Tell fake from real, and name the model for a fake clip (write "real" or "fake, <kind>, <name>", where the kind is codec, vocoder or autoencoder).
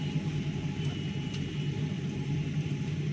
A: real